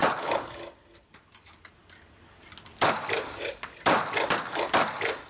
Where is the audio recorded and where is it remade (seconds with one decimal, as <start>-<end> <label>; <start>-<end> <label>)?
0.0-5.3 recorded